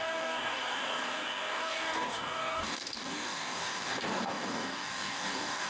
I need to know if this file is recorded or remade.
remade